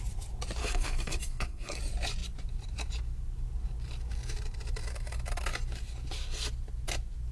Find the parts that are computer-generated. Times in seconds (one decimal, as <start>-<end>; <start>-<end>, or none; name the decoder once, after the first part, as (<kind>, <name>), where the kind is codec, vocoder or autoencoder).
0.6-1.8 (codec, SNAC)